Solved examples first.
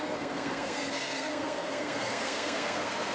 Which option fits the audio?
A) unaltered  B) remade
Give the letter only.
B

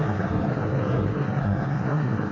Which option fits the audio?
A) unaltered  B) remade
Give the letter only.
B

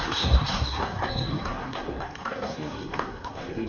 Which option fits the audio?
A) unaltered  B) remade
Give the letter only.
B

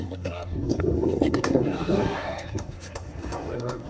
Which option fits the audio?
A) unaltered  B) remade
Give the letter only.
B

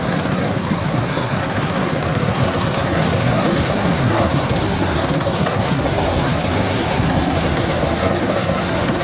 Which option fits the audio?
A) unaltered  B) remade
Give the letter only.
B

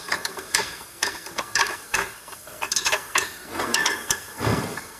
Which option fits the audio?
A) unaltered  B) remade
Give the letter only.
B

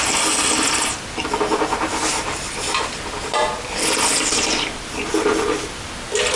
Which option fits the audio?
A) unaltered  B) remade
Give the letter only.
A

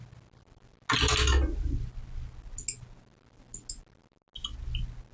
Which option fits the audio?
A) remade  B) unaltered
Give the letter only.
B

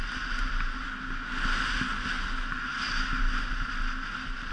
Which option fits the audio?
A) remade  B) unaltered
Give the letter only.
B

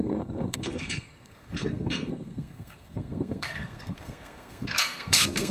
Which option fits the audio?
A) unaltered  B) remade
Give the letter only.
B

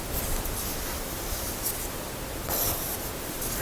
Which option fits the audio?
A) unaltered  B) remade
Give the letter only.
A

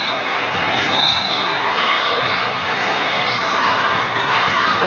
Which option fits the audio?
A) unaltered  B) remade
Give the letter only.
B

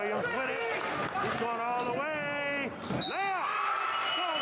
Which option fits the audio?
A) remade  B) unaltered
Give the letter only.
B